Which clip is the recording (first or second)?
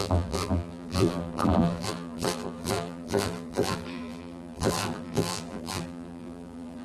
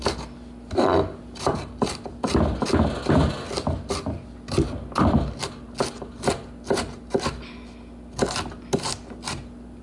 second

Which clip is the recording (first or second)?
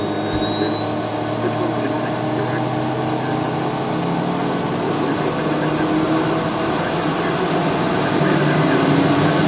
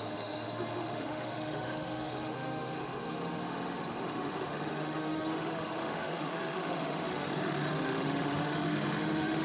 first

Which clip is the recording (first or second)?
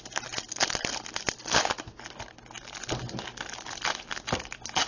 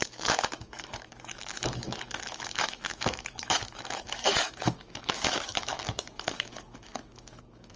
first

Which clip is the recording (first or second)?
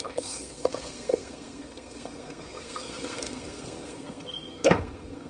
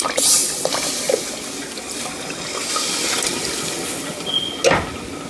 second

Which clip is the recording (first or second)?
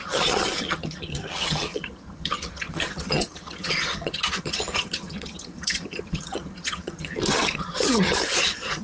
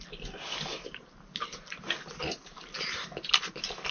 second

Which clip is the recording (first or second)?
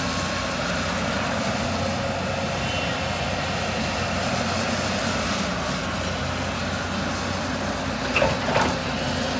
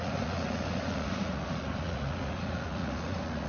first